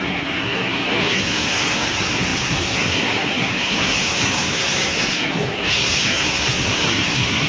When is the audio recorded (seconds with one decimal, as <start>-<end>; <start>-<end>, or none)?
none